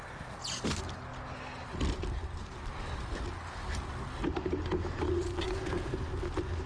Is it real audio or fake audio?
real